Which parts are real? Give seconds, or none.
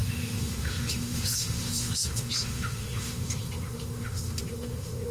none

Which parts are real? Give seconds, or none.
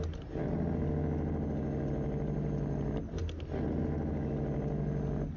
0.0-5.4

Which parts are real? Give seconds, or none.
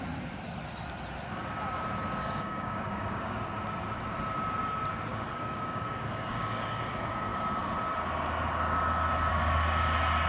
0.0-2.2; 3.4-5.1; 6.8-10.3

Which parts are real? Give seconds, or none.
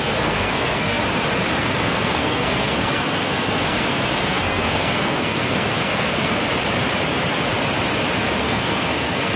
1.0-1.6; 6.4-8.4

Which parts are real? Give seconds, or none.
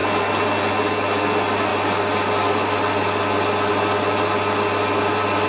0.0-5.5